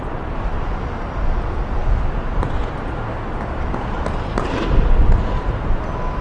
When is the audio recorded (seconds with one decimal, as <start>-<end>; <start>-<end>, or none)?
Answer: 0.0-6.2